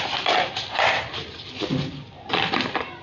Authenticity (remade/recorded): recorded